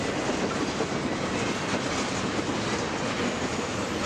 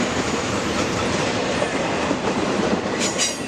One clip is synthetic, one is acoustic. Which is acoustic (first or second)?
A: first